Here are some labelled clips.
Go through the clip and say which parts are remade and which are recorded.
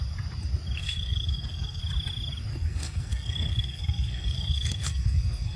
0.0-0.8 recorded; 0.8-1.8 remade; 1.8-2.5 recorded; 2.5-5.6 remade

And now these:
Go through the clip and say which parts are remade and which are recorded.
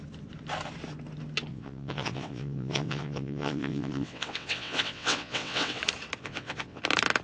0.0-1.5 recorded; 1.5-5.8 remade; 5.8-6.2 recorded; 6.2-6.8 remade; 6.8-7.2 recorded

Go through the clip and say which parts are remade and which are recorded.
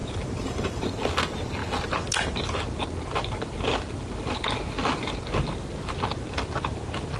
0.0-0.9 remade; 0.9-7.2 recorded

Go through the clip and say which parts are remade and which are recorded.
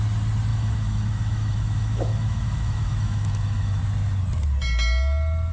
0.0-0.5 recorded; 0.5-3.8 remade; 3.8-5.5 recorded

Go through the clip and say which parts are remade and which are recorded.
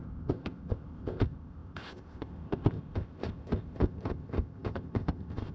0.0-5.5 remade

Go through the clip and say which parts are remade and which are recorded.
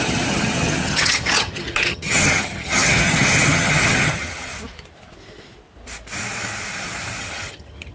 0.0-4.5 remade; 4.5-7.2 recorded; 7.2-7.9 remade